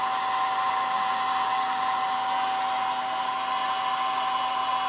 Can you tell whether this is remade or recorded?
recorded